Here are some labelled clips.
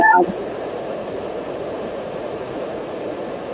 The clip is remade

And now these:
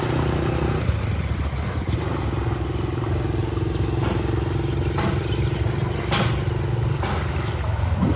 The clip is recorded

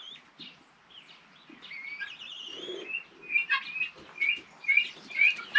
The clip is recorded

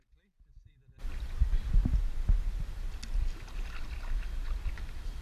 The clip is recorded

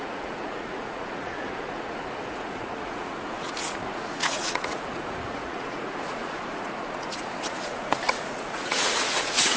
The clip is remade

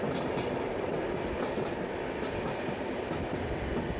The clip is recorded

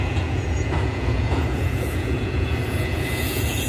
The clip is remade